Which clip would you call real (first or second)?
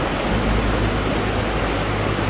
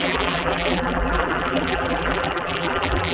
first